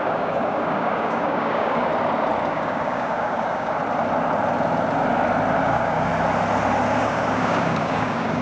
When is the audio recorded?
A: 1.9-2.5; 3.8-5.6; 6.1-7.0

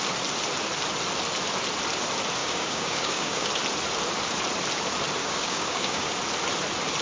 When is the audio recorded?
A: 0.0-2.4; 3.5-5.2; 6.1-7.0

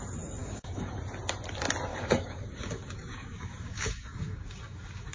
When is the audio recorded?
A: 0.0-0.4; 1.0-1.9

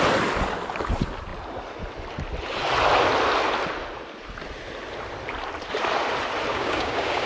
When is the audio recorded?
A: 0.0-6.5

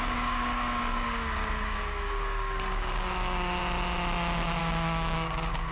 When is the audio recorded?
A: 3.6-4.6

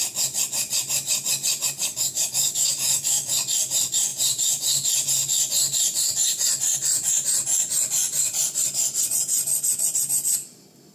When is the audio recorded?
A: 0.0-1.8; 3.3-10.9

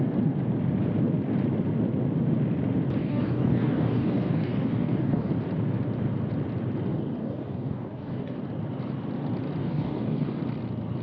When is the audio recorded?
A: 0.0-3.0; 5.3-7.2; 8.4-9.6; 10.4-11.0